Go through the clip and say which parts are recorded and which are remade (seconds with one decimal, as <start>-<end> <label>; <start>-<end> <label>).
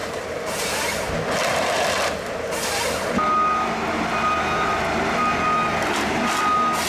0.0-1.1 remade; 1.1-6.9 recorded